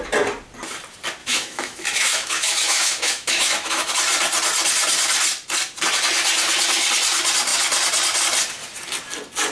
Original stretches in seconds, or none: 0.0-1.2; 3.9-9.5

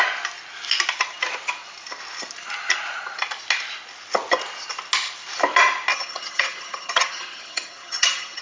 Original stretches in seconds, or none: 0.0-5.9

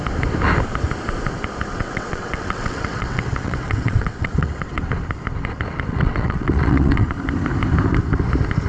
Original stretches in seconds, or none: 0.0-1.7; 4.8-5.9; 7.1-8.7

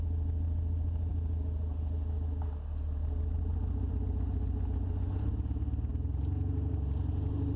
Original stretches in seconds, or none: 0.0-7.6

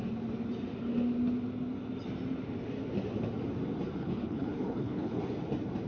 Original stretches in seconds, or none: 0.0-4.0; 5.2-5.9

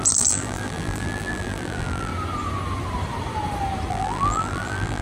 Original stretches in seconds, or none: 2.1-3.9

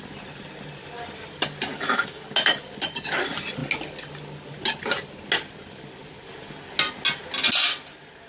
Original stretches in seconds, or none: 0.0-1.7; 2.2-8.3